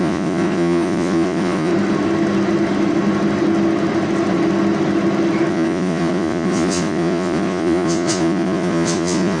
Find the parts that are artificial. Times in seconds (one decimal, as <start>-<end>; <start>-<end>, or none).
0.0-1.7; 5.5-9.4

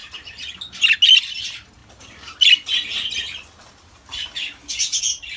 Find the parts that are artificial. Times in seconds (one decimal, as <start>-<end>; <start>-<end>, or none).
none